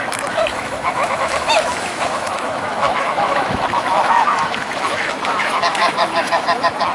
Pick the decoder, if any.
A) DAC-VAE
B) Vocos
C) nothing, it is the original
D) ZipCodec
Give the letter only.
A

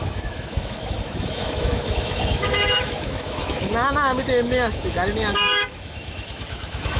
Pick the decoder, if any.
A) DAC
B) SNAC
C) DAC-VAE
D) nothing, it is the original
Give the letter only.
C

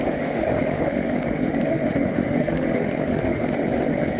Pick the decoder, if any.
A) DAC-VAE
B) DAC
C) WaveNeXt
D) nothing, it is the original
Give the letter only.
A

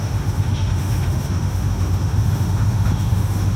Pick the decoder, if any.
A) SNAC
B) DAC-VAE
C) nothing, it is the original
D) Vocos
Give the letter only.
B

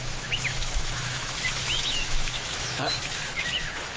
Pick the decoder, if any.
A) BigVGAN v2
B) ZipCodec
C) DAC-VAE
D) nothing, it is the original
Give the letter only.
C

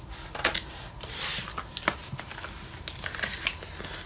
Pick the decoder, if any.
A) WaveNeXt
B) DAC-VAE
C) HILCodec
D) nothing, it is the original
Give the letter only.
D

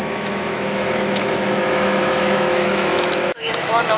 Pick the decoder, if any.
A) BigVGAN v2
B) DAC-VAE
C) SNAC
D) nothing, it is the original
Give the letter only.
B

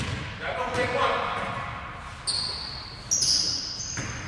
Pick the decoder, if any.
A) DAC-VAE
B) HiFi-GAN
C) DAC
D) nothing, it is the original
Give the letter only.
D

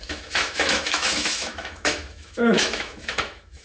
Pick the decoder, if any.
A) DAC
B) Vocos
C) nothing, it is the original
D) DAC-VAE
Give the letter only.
D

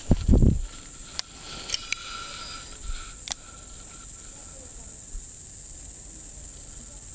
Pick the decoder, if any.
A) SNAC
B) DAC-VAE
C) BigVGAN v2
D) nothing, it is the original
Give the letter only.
D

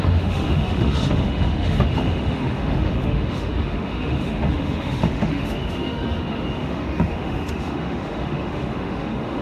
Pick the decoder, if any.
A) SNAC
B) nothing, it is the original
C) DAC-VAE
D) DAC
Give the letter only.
C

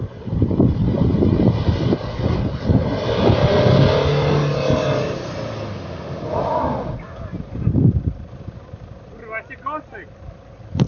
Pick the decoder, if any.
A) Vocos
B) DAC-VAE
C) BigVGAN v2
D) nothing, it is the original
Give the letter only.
D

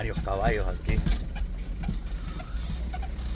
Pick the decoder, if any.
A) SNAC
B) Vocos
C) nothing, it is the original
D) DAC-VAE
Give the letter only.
C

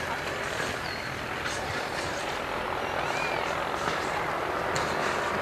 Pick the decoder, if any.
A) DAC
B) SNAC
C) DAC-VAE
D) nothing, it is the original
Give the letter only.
D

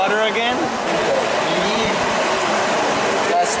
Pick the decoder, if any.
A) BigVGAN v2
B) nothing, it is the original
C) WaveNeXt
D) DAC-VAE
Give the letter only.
B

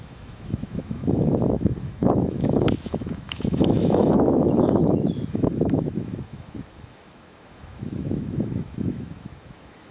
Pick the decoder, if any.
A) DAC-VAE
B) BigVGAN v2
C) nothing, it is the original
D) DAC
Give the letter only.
A